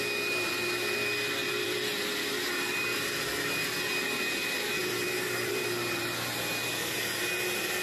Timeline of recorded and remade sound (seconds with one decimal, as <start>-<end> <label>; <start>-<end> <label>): 0.0-1.4 recorded; 1.4-3.6 remade; 3.6-4.8 recorded; 4.8-6.0 remade; 6.0-7.8 recorded